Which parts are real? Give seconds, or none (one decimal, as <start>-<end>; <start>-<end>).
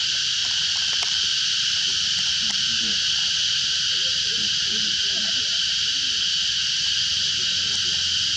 0.0-0.4; 2.6-4.1; 5.3-8.4